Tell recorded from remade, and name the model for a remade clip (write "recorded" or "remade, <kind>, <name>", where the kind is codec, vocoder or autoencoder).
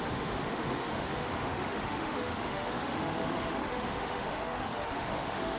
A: remade, autoencoder, DAC-VAE